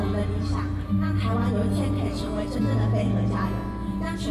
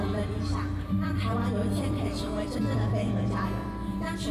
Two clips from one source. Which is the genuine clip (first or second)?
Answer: first